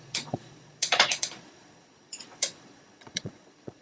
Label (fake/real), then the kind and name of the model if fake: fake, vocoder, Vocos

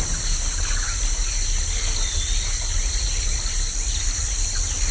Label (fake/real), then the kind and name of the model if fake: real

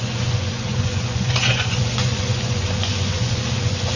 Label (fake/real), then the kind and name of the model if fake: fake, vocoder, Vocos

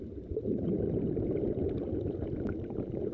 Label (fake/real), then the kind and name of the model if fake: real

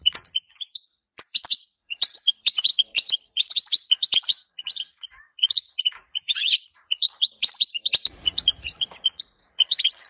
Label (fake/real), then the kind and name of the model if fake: fake, vocoder, Vocos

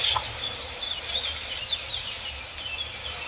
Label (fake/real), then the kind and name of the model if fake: real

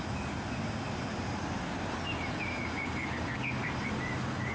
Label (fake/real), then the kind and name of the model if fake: real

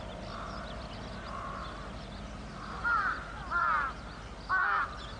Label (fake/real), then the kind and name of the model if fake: real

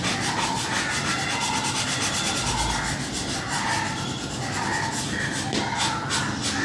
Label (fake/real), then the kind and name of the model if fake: real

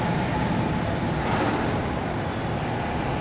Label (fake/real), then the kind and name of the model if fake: real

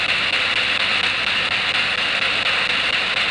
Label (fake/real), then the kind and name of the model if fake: real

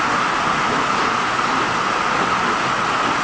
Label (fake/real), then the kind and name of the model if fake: real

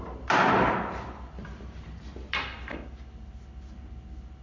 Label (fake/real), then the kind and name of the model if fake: real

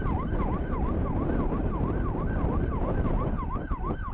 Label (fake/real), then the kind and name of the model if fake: real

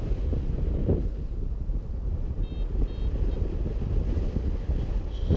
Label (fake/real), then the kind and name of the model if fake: real